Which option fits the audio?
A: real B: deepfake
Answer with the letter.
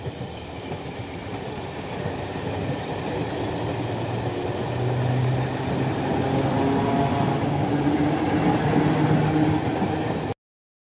A